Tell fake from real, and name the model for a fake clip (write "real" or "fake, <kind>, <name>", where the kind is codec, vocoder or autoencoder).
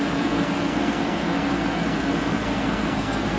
fake, codec, SNAC